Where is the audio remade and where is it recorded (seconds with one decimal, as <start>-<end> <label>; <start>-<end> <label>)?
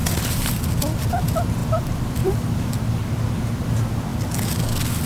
0.0-0.6 remade; 0.6-1.6 recorded; 1.6-2.8 remade; 2.8-5.1 recorded